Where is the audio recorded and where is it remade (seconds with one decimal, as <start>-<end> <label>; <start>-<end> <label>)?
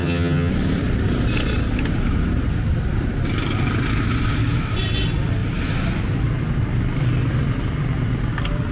0.0-0.5 remade; 0.5-8.7 recorded